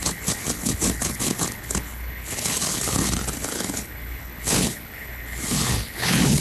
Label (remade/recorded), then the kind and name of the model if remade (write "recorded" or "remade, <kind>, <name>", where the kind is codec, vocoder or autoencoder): remade, codec, HILCodec